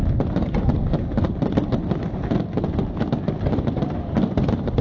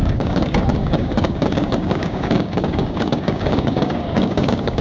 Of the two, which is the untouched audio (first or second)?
first